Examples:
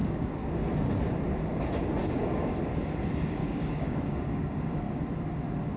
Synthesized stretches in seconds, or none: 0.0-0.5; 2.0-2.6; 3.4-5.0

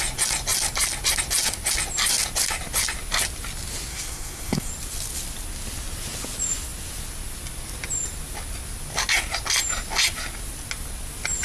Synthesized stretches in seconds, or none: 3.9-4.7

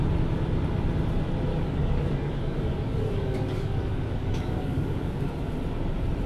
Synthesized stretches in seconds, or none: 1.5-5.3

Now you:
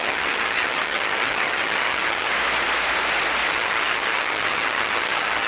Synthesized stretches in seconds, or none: 0.0-2.3; 3.5-5.5

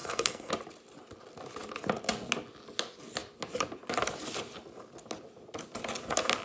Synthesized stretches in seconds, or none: 0.0-0.5

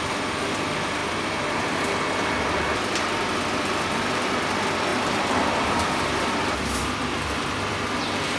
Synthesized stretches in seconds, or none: 4.9-8.0